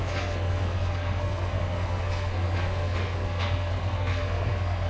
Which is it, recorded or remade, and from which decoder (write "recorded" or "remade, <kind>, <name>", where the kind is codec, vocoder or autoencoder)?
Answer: remade, codec, SNAC